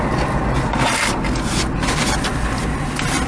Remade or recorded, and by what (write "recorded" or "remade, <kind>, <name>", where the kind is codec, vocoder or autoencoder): recorded